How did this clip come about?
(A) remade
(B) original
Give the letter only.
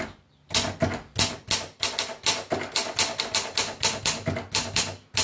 B